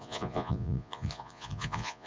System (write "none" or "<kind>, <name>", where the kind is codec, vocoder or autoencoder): vocoder, Vocos